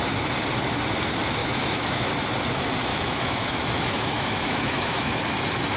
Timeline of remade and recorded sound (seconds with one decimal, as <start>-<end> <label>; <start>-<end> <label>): 0.0-1.4 recorded; 1.4-2.1 remade; 2.1-2.9 recorded; 2.9-5.2 remade; 5.2-5.8 recorded